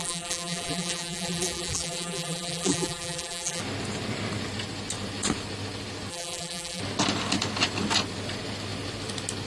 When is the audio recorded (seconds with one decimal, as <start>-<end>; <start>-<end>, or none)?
3.6-6.1; 6.8-9.5